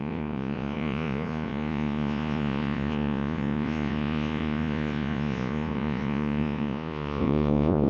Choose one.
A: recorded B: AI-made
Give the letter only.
B